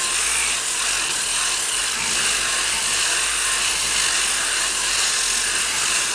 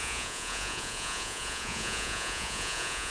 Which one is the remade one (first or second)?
second